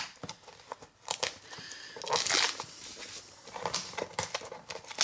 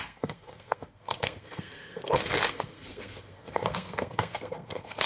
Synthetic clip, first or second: second